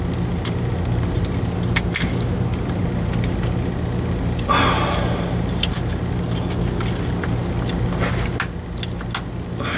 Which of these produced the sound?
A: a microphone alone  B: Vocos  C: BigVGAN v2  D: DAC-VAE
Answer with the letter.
A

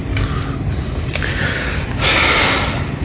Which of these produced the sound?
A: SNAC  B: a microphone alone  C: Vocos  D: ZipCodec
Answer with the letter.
B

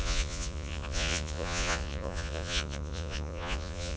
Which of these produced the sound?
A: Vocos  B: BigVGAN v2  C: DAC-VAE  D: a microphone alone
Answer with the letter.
A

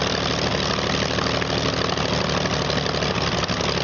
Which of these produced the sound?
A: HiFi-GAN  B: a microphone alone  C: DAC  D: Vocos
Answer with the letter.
B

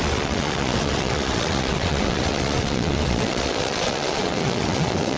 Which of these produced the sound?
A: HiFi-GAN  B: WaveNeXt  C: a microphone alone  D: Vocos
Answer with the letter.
B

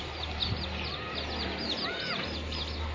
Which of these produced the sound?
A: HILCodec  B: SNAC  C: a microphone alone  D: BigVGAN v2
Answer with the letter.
C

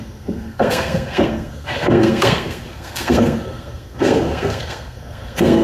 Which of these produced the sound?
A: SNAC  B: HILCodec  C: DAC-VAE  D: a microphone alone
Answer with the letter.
A